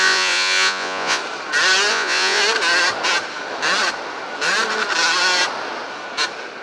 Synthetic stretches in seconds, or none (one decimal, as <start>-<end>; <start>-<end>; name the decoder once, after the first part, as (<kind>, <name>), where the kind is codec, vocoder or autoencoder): 0.0-1.2 (vocoder, Vocos); 1.9-2.4